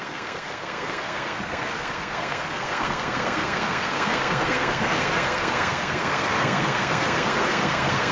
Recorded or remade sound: remade